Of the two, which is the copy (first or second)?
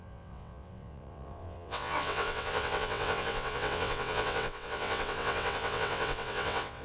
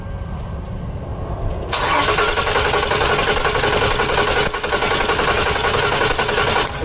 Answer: first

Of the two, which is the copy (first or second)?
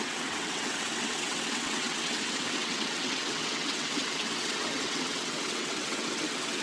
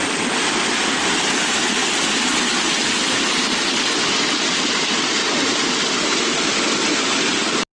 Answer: first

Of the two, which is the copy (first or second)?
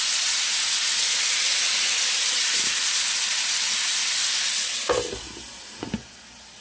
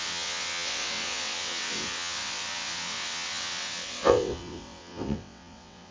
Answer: second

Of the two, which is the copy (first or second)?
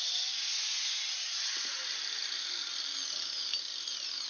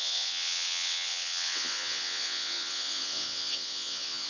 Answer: second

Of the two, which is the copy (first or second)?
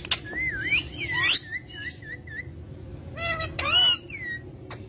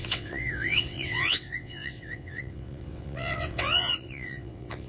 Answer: second